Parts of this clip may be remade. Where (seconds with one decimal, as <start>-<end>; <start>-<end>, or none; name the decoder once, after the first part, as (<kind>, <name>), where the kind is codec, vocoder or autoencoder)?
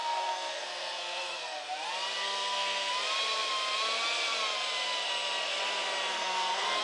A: 0.0-1.6 (codec, SNAC); 2.2-2.9; 6.1-6.8